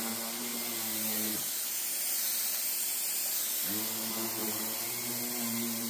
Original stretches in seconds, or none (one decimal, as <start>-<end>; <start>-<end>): 0.0-0.5; 1.3-4.4